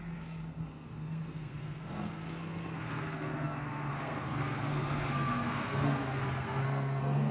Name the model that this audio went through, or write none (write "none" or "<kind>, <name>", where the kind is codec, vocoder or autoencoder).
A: codec, SNAC